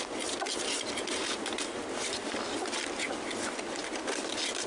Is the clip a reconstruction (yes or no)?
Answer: no